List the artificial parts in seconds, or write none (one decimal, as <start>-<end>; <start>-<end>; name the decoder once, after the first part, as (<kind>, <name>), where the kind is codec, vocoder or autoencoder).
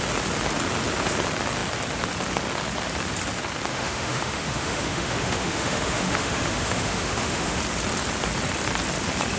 3.7-7.6 (autoencoder, DAC-VAE)